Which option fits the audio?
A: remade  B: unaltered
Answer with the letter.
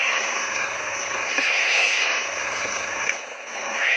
A